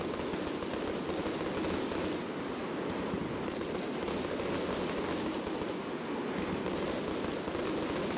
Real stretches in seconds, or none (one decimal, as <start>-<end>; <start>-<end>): 0.0-8.2